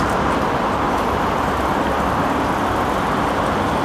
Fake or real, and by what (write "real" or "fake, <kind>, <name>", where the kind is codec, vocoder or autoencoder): real